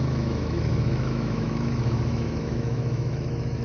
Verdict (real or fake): fake